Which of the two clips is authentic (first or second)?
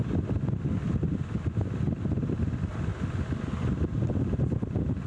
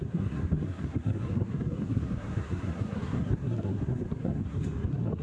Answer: first